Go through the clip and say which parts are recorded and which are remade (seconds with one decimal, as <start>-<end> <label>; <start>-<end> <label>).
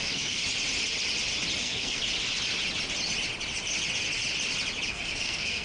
0.0-0.4 remade; 0.4-1.6 recorded; 1.6-2.0 remade; 2.0-4.9 recorded; 4.9-5.6 remade